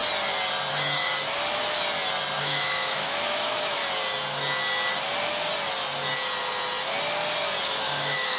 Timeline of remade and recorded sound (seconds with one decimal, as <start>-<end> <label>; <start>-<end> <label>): 0.0-0.7 recorded; 0.7-1.1 remade; 1.1-2.4 recorded; 2.4-3.8 remade; 3.8-7.6 recorded; 7.6-8.4 remade